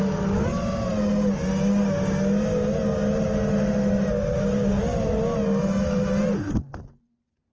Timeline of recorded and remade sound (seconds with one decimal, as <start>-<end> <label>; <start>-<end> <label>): 0.0-7.5 recorded

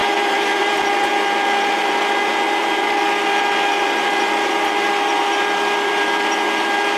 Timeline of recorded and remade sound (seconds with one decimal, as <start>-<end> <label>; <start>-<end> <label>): 0.0-1.1 remade; 1.1-7.0 recorded

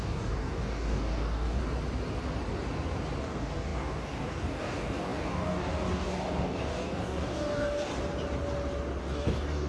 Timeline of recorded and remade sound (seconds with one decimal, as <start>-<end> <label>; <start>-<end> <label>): 0.0-1.6 remade; 1.6-3.2 recorded; 3.2-7.9 remade; 7.9-9.0 recorded; 9.0-9.7 remade

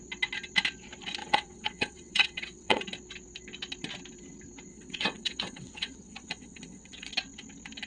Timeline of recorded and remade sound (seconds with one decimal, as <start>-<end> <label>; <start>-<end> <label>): 0.0-1.2 recorded; 1.2-2.8 remade; 2.8-4.7 recorded; 4.7-7.1 remade; 7.1-7.9 recorded

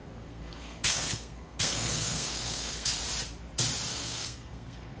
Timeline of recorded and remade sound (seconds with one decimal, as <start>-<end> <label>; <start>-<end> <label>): 0.0-3.0 remade; 3.0-3.9 recorded; 3.9-5.0 remade

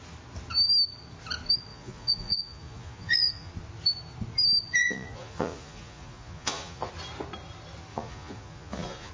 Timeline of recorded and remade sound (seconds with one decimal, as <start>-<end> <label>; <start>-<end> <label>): 0.0-1.7 recorded; 1.7-3.5 remade; 3.5-4.8 recorded; 4.8-6.9 remade; 6.9-7.9 recorded; 7.9-9.1 remade

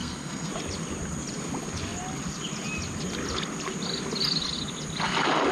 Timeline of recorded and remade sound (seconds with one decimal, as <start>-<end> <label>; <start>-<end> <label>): 0.0-0.5 remade; 0.5-5.5 recorded